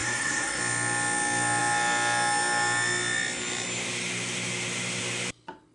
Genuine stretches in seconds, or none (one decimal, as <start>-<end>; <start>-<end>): 0.6-5.7